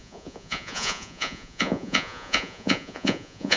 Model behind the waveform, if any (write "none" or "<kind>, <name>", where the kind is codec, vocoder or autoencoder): vocoder, Vocos